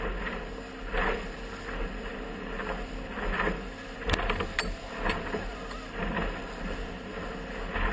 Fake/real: real